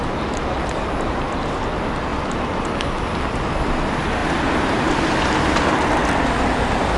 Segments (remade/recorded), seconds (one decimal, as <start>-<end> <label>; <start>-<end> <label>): 0.0-4.2 recorded; 4.2-4.9 remade; 4.9-7.0 recorded